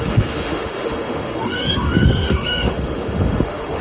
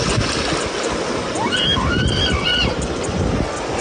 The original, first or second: second